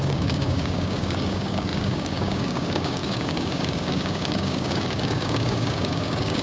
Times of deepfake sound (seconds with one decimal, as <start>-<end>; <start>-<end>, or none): 0.0-6.4